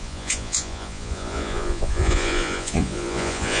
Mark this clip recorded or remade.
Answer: remade